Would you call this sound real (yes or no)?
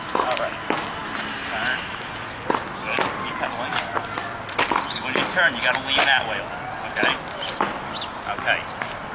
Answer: yes